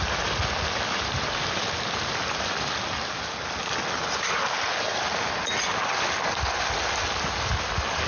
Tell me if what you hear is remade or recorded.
recorded